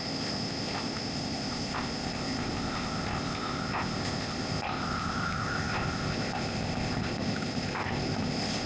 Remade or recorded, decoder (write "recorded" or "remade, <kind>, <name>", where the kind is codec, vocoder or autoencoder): remade, codec, ZipCodec